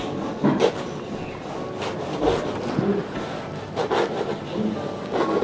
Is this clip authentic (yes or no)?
yes